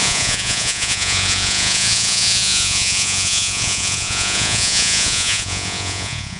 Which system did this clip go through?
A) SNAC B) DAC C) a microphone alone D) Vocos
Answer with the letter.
D